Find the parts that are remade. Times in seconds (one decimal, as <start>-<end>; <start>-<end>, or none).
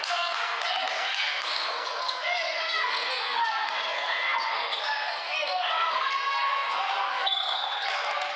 0.0-8.4